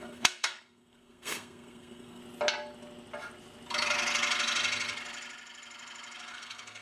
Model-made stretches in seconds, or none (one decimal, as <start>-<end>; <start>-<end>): 0.0-2.2; 6.3-6.8